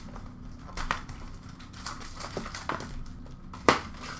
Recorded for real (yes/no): yes